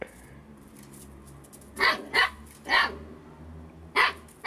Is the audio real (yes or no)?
yes